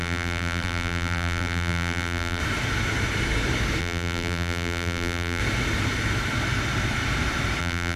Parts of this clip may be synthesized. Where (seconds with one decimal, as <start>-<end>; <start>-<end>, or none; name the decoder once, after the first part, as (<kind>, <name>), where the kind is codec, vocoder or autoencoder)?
0.0-2.4 (vocoder, BigVGAN v2); 3.8-5.4; 7.6-8.0